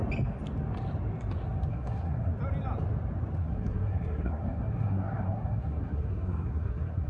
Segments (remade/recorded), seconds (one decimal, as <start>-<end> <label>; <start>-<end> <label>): 0.0-1.7 recorded; 1.7-2.3 remade; 2.3-3.4 recorded; 3.4-7.1 remade